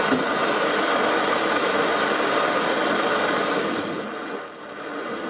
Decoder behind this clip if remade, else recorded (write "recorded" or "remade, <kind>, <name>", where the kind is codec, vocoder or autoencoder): recorded